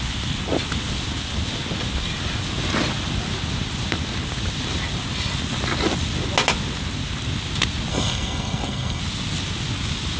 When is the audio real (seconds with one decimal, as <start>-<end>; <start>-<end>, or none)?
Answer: 0.0-7.9; 9.0-10.2